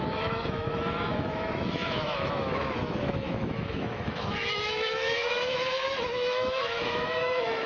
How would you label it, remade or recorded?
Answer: remade